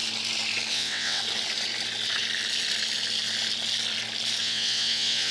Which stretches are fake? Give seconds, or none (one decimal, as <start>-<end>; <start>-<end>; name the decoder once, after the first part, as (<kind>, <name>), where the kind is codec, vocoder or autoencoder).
0.7-1.2 (vocoder, WaveNeXt); 4.4-5.3